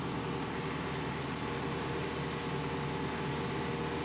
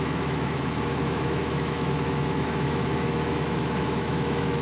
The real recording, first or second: first